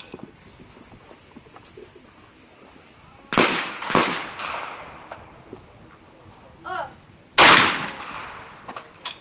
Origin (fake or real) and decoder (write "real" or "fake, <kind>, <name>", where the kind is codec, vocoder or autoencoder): real